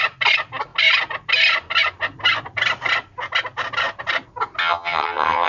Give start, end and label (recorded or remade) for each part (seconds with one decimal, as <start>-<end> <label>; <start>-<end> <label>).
0.0-4.6 recorded; 4.6-5.5 remade

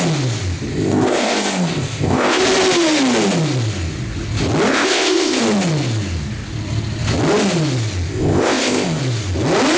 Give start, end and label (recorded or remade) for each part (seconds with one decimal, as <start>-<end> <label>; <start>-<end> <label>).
0.0-0.7 recorded; 0.7-2.4 remade; 2.4-4.7 recorded; 4.7-5.4 remade; 5.4-8.1 recorded; 8.1-9.0 remade; 9.0-9.8 recorded